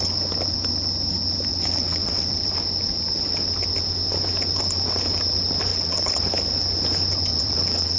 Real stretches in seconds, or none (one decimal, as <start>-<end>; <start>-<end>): 0.0-1.5; 2.5-5.7; 6.2-7.3